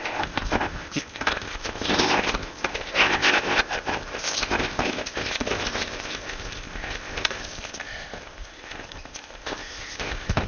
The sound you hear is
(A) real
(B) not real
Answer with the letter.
B